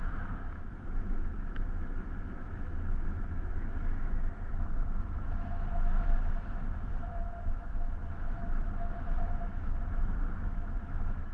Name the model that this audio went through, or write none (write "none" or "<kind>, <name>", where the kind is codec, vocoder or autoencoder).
autoencoder, DAC-VAE